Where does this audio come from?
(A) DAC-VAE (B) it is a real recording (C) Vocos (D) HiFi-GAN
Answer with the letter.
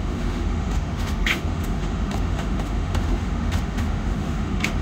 A